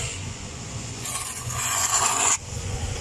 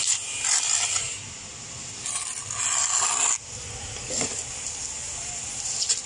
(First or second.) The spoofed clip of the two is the first